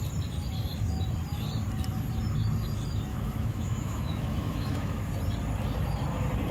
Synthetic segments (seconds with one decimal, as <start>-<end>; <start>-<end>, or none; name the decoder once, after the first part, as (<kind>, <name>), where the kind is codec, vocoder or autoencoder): 3.1-5.1 (autoencoder, DAC-VAE)